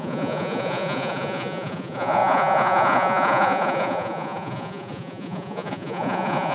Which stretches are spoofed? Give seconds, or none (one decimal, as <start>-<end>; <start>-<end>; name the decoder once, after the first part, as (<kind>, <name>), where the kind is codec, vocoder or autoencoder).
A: 0.0-6.5 (vocoder, Vocos)